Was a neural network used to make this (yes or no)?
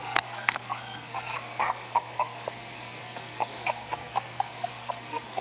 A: yes